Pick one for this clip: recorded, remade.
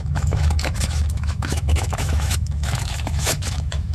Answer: remade